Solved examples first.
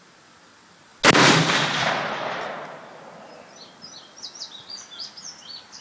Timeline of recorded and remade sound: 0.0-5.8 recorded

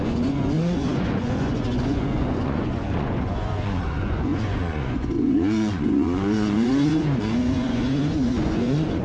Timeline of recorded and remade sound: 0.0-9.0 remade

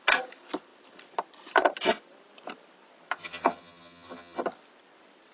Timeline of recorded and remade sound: 0.0-3.2 recorded; 3.2-4.4 remade; 4.4-5.3 recorded

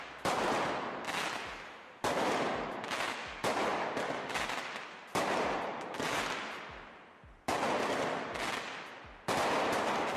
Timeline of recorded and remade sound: 0.0-10.2 recorded

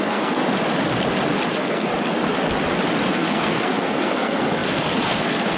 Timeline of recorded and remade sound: 0.0-0.4 remade; 0.4-1.5 recorded; 1.5-1.9 remade; 1.9-3.1 recorded; 3.1-5.6 remade

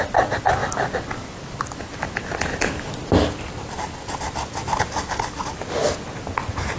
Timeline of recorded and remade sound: 0.0-6.8 recorded

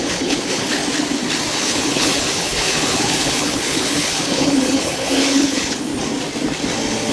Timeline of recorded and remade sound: 0.0-0.8 remade; 0.8-1.5 recorded; 1.5-5.9 remade; 5.9-7.1 recorded

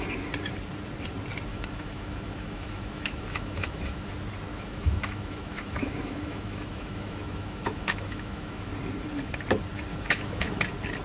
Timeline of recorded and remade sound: 0.0-1.5 recorded; 1.5-4.1 remade; 4.1-4.5 recorded; 4.5-8.7 remade; 8.7-9.9 recorded; 9.9-10.6 remade; 10.6-11.0 recorded